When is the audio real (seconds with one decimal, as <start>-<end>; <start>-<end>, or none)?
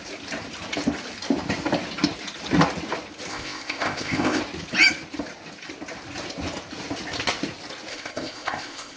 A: 0.0-3.3; 4.4-7.9